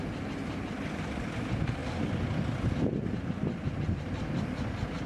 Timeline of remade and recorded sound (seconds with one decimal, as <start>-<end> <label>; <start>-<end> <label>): 0.0-5.1 recorded